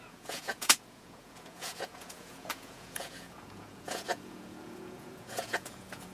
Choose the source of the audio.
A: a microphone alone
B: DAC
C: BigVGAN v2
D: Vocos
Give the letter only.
D